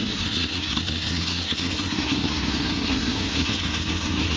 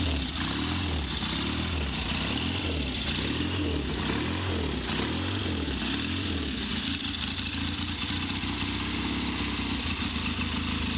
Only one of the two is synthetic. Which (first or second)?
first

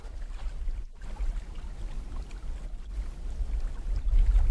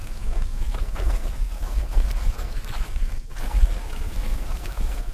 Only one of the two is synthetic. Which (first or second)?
second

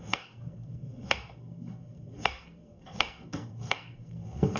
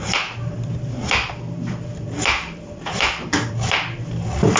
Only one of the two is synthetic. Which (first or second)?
first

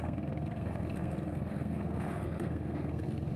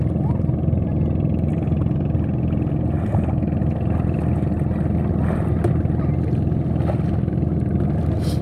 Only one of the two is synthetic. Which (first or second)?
first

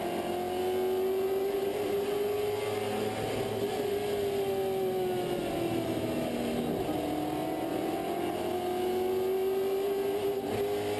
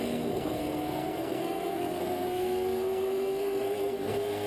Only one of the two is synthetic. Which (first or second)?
second